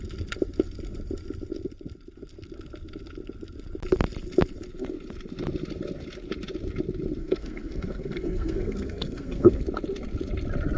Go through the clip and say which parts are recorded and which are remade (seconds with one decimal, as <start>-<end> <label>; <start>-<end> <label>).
0.0-7.2 recorded; 7.2-9.6 remade; 9.6-10.8 recorded